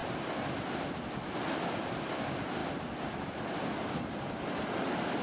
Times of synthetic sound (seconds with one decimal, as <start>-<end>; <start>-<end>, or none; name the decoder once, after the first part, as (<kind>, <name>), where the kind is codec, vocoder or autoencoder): none